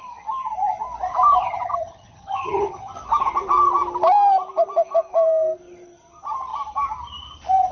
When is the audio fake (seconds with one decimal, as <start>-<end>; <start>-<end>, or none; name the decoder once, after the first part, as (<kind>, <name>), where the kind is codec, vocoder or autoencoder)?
1.4-3.0 (vocoder, HiFi-GAN)